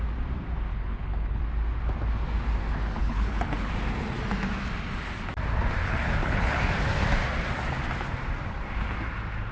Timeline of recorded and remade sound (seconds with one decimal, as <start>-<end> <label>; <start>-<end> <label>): 0.0-0.7 recorded; 0.7-1.4 remade; 1.4-3.0 recorded; 3.0-3.7 remade; 3.7-5.8 recorded; 5.8-6.6 remade; 6.6-9.5 recorded